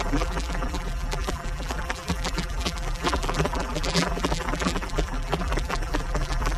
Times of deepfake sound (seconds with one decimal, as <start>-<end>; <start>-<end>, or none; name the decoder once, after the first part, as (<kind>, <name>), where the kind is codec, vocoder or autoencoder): 0.0-6.6 (vocoder, BigVGAN v2)